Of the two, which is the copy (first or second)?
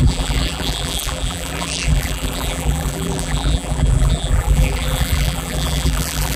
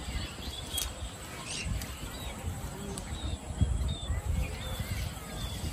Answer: first